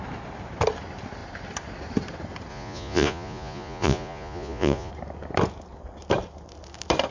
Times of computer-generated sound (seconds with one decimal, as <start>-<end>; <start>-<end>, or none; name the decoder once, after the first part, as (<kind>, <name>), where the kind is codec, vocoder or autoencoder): 2.5-4.9 (vocoder, Vocos)